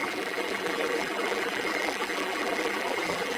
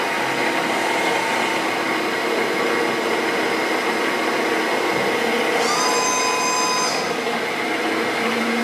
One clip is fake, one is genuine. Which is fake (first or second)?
first